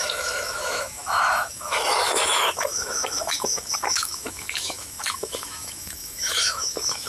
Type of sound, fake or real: fake